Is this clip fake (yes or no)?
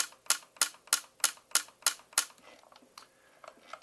no